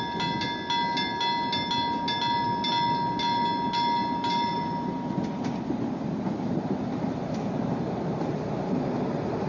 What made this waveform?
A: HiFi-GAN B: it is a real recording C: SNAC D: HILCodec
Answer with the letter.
B